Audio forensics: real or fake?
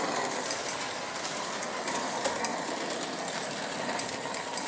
real